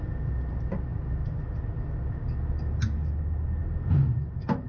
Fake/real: real